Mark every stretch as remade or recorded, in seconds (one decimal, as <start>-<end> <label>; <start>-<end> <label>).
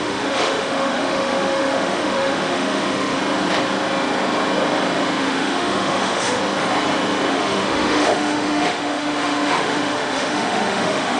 0.0-3.2 remade; 3.2-5.2 recorded; 5.2-6.4 remade; 6.4-7.3 recorded; 7.3-11.2 remade